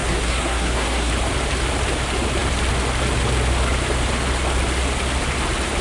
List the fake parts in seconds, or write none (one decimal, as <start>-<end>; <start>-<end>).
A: 0.0-1.1